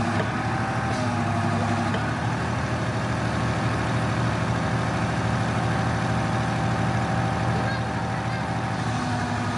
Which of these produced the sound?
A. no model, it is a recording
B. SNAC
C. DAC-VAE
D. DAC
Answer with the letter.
A